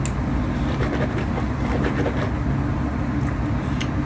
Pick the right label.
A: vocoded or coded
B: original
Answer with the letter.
B